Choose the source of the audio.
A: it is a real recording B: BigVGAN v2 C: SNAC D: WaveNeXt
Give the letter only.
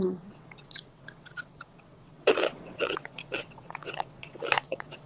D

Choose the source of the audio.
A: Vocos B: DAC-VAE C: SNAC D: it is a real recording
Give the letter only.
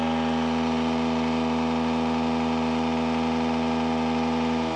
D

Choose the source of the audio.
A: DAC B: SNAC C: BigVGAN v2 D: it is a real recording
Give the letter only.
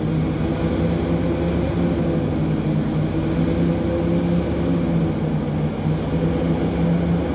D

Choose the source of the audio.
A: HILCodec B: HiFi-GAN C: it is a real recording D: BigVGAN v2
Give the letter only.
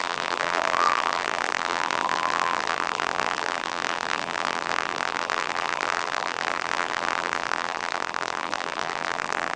D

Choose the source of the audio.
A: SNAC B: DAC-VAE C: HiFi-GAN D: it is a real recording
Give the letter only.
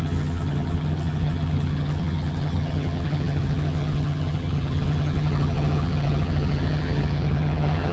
C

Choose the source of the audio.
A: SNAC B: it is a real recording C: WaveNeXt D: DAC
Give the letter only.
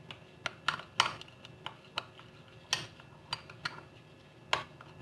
B